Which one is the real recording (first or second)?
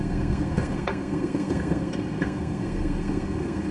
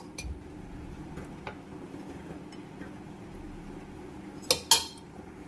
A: second